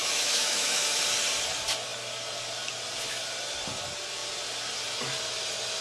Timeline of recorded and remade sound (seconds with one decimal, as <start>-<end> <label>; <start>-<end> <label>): 0.0-1.0 remade; 1.0-5.8 recorded